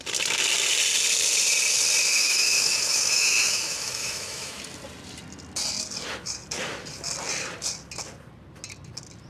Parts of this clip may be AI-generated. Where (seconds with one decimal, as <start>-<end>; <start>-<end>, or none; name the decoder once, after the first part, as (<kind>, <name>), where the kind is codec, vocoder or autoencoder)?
2.1-4.6 (autoencoder, DAC-VAE)